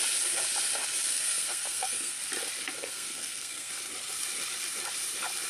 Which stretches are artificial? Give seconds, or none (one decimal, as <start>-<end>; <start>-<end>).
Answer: 1.1-2.2; 2.8-3.7